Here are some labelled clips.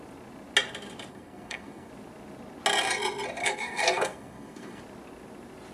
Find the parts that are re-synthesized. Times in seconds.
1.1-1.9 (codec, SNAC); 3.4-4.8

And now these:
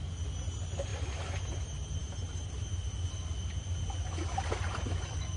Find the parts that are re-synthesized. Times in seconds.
none

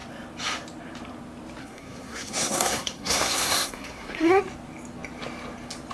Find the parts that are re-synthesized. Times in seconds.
1.6-4.4 (codec, SNAC)

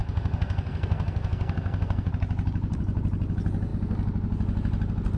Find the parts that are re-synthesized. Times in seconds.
0.0-2.1 (codec, SNAC)